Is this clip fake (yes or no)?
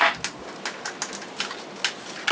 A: no